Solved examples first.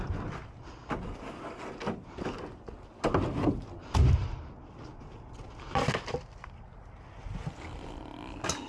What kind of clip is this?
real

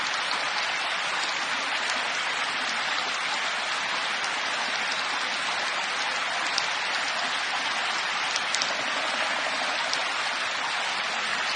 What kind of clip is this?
real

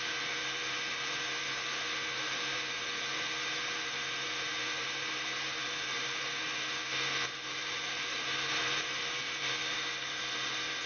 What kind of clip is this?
fake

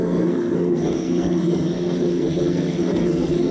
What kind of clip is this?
fake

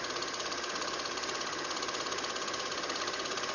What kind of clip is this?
real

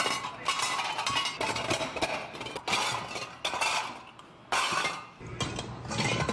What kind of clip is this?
real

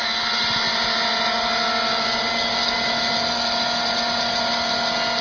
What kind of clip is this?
real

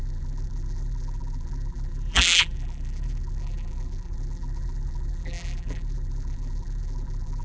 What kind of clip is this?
fake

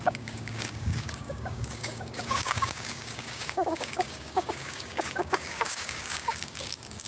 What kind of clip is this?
fake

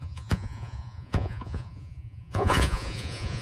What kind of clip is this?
fake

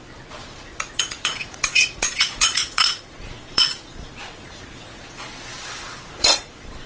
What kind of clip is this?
fake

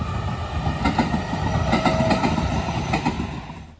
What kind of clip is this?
real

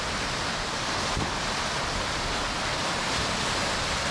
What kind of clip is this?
fake